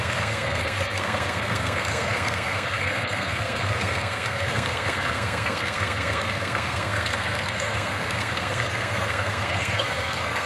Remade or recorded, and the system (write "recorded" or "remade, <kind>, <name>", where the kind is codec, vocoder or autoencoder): remade, codec, SNAC